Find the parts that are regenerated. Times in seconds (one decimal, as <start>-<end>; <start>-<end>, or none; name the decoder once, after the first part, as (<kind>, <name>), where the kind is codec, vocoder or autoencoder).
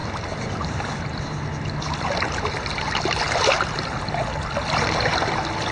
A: none